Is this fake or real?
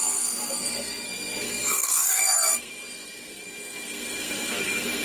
fake